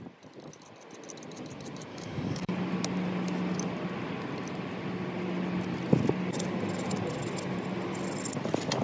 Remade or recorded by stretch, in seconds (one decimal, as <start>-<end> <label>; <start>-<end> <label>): 0.0-1.9 recorded; 1.9-2.5 remade; 2.5-8.8 recorded